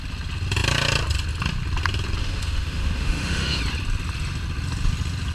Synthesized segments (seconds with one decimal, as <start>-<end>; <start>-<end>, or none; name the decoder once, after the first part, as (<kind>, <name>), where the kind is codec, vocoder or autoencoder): 2.2-3.6 (autoencoder, DAC-VAE)